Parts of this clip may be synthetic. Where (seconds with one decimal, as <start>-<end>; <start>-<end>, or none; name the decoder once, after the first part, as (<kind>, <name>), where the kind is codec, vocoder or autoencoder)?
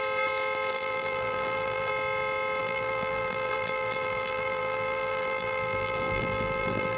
0.7-1.9 (vocoder, BigVGAN v2); 2.6-7.0